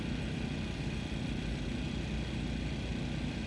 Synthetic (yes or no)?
no